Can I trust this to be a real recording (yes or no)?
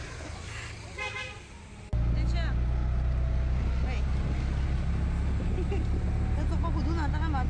yes